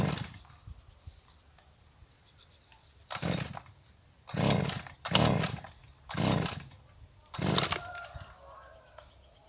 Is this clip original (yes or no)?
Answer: yes